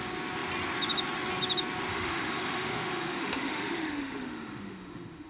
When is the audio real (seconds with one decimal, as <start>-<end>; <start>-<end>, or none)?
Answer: 0.0-1.9